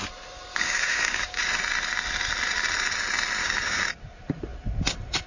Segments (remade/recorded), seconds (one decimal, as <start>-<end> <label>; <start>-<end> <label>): 0.0-0.5 recorded; 0.5-1.4 remade; 1.4-3.4 recorded; 3.4-4.0 remade; 4.0-5.3 recorded